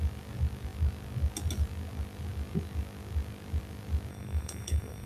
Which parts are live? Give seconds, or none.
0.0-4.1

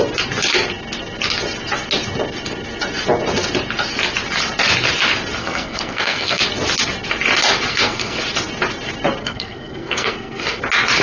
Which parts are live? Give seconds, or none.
0.0-5.4; 6.4-7.7; 8.2-9.2; 10.6-11.0